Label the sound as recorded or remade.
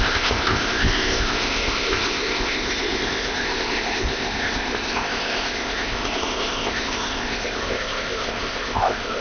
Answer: remade